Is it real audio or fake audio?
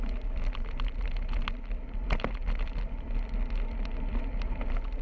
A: real